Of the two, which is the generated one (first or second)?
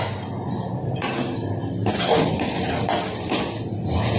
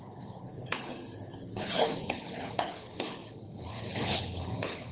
second